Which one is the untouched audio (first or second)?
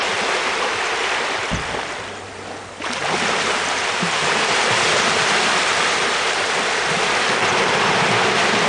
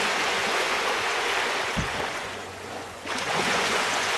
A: first